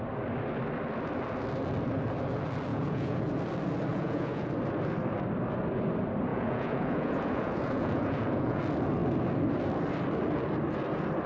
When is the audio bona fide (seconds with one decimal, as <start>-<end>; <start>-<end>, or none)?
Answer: 0.0-2.7; 3.2-3.9; 4.5-6.3; 8.6-11.3

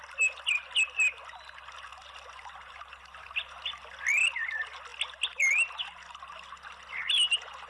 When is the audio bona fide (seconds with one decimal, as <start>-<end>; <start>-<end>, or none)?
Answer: 0.0-7.7

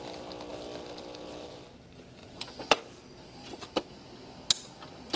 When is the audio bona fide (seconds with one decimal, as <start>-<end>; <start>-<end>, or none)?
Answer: 0.0-2.2; 2.8-5.2

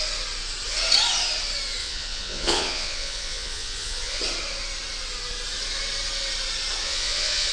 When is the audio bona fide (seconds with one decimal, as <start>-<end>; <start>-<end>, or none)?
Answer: 0.0-1.8; 4.2-6.8

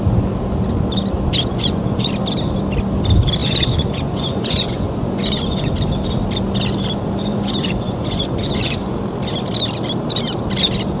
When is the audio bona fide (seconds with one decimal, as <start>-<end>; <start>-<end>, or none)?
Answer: 0.0-1.5; 2.1-3.4; 5.7-7.2; 9.0-11.0

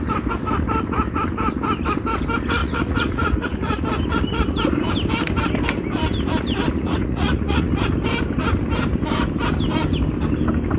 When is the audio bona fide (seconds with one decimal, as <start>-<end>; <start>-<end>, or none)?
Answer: 0.0-2.6; 3.8-6.7; 7.7-10.8

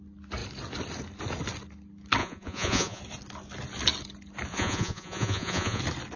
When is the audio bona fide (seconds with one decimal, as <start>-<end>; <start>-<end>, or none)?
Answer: 0.0-2.2; 3.0-4.5; 5.8-6.2

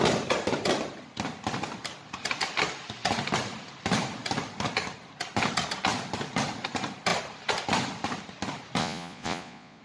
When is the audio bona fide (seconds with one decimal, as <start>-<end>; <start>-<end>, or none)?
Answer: 0.0-8.8